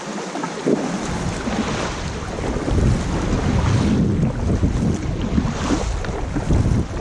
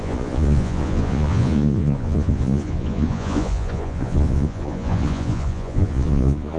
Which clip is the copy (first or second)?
second